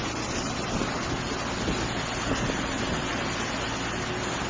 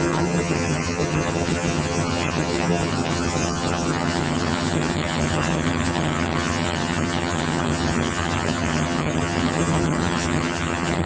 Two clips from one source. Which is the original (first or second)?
first